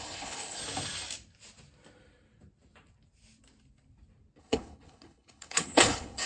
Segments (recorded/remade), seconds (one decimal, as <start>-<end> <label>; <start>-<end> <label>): 0.0-0.6 remade; 0.6-4.4 recorded; 4.4-6.3 remade